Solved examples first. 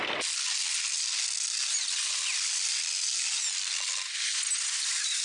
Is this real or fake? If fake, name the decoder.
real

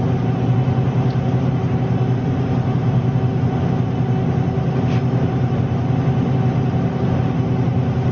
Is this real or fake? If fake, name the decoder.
real